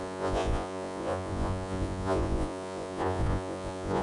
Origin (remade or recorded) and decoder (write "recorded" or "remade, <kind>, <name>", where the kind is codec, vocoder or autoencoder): remade, vocoder, Vocos